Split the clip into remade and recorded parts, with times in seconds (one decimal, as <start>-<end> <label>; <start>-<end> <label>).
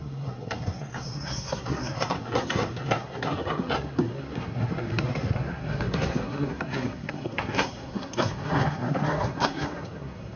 0.0-10.4 remade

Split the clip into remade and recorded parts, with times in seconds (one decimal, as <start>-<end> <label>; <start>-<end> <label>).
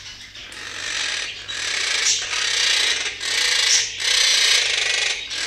0.0-5.5 recorded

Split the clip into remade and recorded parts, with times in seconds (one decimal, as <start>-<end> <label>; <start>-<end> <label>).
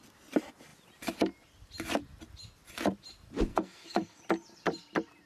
0.0-3.5 recorded; 3.5-4.2 remade; 4.2-5.3 recorded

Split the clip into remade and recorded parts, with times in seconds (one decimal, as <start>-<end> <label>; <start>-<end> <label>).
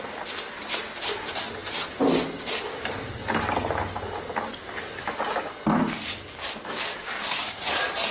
0.0-8.1 recorded